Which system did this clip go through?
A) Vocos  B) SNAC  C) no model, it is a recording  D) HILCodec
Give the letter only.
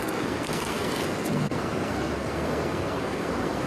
B